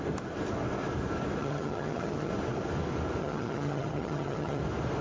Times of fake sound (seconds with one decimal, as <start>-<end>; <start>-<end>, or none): 1.4-2.3; 3.2-4.6

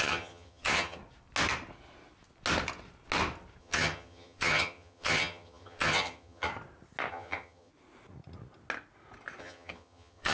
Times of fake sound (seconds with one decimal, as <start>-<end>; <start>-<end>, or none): 0.0-1.0; 3.6-6.5; 7.1-7.7; 9.4-10.3

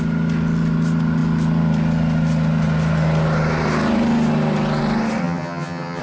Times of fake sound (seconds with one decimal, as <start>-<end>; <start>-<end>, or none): 5.2-6.0

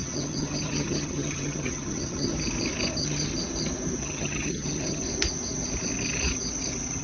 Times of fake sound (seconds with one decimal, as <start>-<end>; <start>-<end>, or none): 0.0-2.3; 2.9-3.3; 4.0-5.0

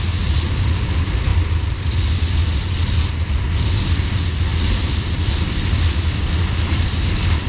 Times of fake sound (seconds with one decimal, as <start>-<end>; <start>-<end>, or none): none

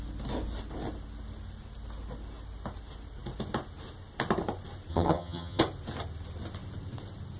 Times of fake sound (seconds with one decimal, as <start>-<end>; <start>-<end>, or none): 4.9-5.6

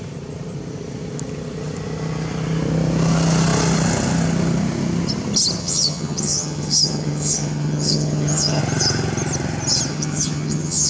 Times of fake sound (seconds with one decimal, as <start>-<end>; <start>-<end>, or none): 5.6-8.6; 9.9-10.9

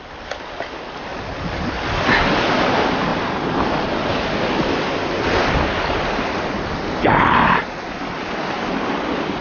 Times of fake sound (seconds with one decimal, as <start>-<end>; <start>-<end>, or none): none